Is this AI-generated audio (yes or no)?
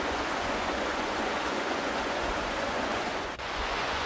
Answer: yes